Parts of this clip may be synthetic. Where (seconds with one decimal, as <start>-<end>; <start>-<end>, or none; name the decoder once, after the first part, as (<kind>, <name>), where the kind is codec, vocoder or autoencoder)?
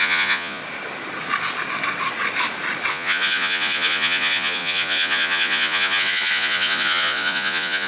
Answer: 0.0-0.6 (vocoder, Vocos); 2.9-7.9